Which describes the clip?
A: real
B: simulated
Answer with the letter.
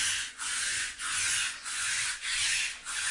B